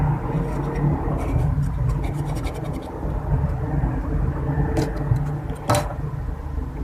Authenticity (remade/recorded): recorded